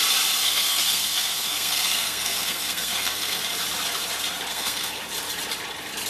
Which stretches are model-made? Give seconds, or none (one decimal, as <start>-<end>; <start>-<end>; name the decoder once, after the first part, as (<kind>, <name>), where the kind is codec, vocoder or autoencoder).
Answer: 0.4-3.4 (codec, SNAC); 4.5-5.0